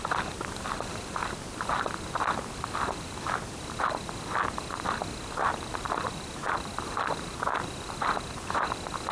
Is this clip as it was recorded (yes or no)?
yes